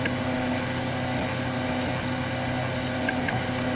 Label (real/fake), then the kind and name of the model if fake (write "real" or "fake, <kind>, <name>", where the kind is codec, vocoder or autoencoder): real